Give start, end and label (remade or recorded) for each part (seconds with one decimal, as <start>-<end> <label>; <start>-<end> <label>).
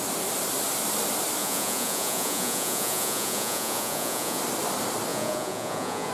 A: 0.0-1.4 recorded; 1.4-4.4 remade; 4.4-5.1 recorded; 5.1-6.1 remade